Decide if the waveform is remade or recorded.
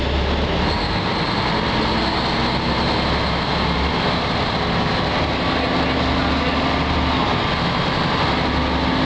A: recorded